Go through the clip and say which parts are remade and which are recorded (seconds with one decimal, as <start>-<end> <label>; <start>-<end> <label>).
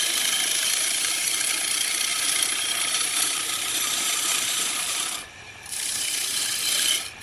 0.0-0.6 recorded; 0.6-1.2 remade; 1.2-2.1 recorded; 2.1-6.4 remade; 6.4-7.2 recorded